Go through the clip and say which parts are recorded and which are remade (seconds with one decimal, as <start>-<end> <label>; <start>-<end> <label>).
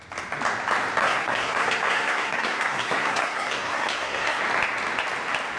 0.0-1.0 recorded; 1.0-4.4 remade; 4.4-5.6 recorded